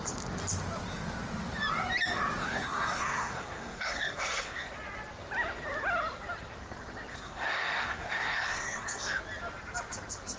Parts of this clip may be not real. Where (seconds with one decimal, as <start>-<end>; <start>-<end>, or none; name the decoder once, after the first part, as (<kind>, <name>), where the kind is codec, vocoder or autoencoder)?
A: 2.4-4.7 (codec, SNAC); 7.1-9.2